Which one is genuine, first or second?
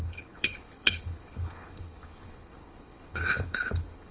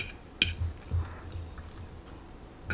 second